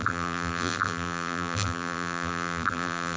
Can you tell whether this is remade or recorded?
remade